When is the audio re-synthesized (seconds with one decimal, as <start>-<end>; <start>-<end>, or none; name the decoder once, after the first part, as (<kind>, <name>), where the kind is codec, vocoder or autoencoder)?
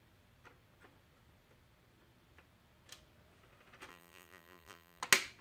3.9-5.0 (vocoder, BigVGAN v2)